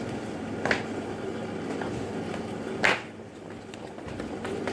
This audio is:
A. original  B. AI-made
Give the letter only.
A